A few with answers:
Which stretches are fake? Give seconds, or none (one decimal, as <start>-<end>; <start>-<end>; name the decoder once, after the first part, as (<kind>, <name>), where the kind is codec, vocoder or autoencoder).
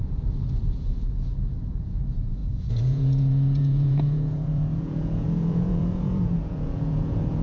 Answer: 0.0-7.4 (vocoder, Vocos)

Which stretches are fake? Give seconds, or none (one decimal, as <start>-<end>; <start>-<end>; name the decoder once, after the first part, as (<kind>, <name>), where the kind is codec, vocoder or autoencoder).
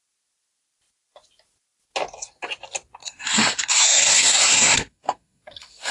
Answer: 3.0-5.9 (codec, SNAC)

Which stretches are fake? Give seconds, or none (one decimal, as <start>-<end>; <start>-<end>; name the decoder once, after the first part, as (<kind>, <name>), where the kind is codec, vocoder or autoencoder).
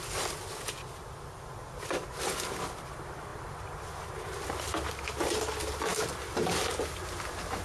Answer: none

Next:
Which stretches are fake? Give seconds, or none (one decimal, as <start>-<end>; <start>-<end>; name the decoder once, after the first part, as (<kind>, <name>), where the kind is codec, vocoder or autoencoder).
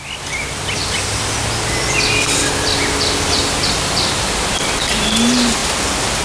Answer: none